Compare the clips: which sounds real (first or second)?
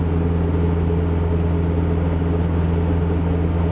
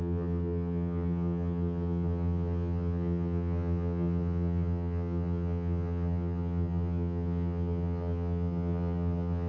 first